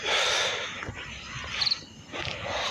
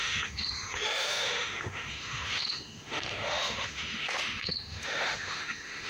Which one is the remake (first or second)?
second